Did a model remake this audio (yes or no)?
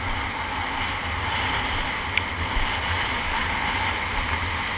no